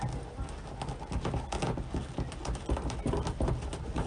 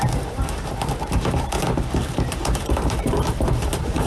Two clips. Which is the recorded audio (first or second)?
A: first